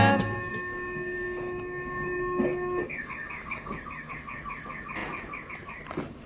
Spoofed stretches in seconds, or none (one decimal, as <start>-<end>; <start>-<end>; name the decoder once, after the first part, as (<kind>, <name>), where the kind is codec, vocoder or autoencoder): 0.5-4.1 (codec, DAC)